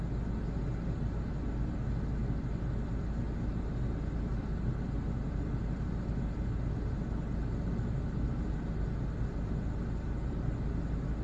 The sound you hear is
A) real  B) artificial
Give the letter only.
A